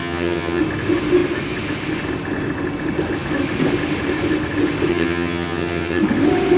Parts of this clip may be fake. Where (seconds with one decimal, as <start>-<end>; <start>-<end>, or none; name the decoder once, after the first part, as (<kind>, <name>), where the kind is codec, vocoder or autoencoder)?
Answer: 0.0-0.6 (vocoder, HiFi-GAN); 4.9-6.0